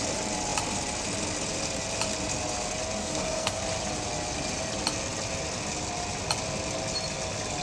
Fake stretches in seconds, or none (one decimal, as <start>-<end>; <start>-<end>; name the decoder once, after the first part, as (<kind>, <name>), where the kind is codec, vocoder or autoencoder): 3.0-3.6 (codec, SNAC)